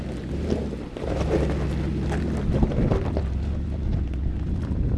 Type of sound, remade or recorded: recorded